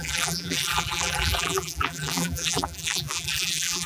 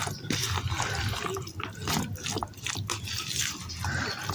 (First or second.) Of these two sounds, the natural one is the second